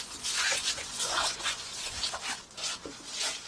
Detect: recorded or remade remade